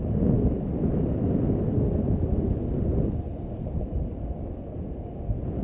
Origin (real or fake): real